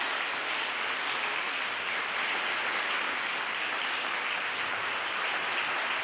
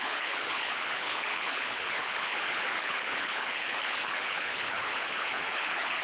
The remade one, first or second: second